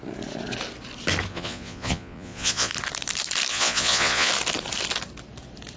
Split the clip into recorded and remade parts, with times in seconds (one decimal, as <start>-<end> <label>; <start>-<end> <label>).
0.0-1.3 recorded; 1.3-2.7 remade; 2.7-3.5 recorded; 3.5-4.3 remade; 4.3-5.8 recorded